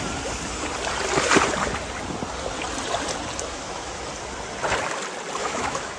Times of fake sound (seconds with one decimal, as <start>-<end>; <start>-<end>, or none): 3.5-4.0; 5.4-6.0